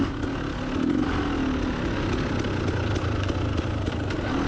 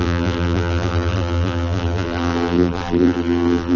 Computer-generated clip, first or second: second